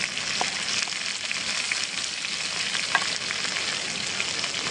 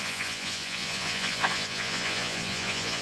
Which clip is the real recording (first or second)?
first